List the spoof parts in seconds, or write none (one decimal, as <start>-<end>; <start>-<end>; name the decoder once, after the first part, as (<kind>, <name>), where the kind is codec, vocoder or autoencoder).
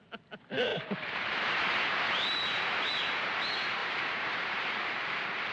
0.7-3.4 (vocoder, BigVGAN v2); 3.8-4.8